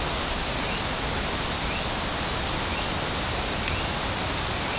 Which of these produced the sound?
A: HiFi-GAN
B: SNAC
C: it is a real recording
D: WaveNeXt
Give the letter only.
C